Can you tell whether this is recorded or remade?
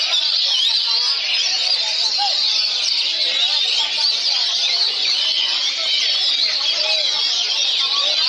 recorded